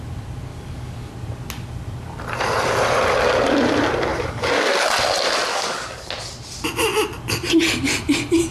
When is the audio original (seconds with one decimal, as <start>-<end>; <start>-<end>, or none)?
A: 0.0-0.5; 1.1-4.1; 4.7-5.5; 6.1-8.5